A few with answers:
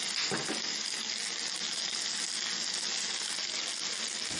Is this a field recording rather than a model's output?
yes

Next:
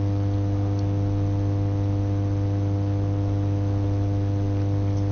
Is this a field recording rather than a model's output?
yes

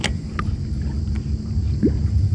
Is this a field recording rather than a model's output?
yes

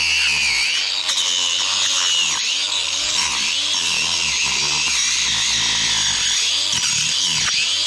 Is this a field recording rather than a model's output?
yes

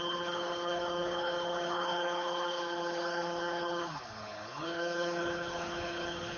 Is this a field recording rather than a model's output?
no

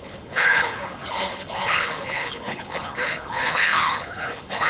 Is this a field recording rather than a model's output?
no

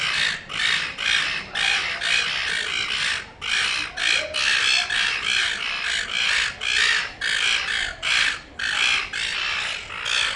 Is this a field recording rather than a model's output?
yes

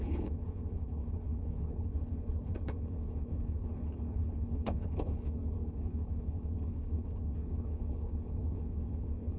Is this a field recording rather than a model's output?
no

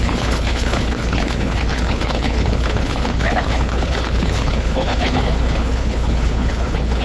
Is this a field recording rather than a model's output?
no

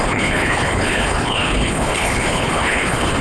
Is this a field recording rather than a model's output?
no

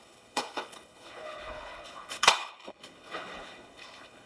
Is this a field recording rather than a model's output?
no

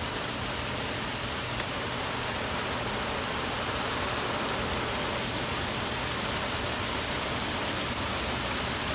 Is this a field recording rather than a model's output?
yes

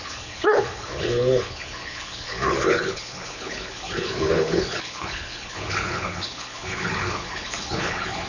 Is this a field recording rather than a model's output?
no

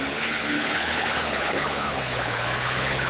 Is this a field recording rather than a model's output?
no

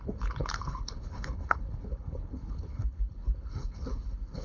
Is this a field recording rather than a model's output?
no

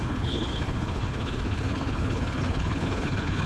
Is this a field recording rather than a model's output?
no